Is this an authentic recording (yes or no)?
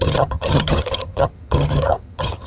no